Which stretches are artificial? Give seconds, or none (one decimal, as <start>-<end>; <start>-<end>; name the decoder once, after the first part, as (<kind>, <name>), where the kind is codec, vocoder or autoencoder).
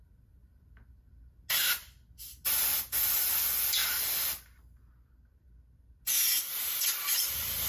none